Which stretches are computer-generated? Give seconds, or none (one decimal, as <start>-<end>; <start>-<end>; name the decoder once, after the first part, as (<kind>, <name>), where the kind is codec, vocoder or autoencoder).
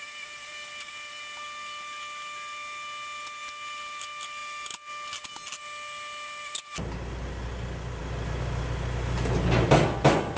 none